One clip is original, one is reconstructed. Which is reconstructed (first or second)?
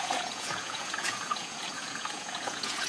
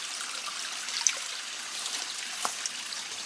first